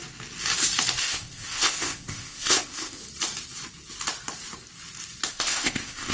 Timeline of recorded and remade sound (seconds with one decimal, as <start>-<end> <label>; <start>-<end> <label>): 0.0-1.0 recorded; 1.0-3.0 remade; 3.0-5.3 recorded; 5.3-6.1 remade